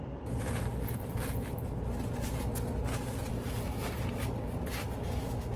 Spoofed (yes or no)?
no